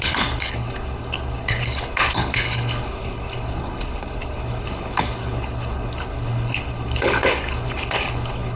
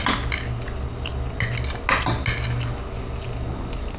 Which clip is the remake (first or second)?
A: first